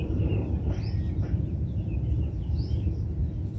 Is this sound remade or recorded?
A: recorded